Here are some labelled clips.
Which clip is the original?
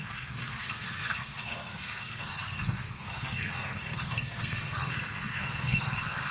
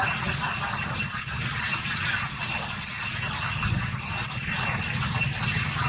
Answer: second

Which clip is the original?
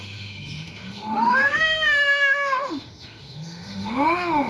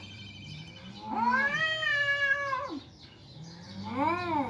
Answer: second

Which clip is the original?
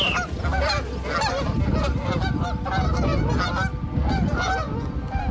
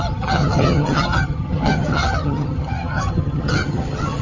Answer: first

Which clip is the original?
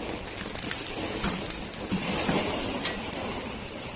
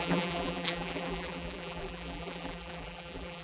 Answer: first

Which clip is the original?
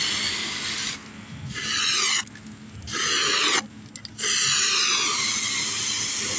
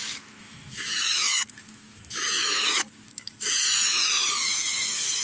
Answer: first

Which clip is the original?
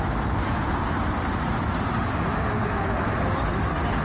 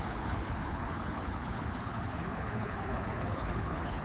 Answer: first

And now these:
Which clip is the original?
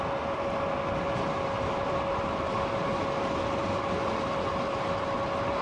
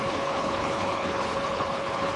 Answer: first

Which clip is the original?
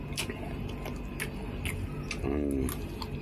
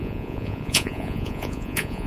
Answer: first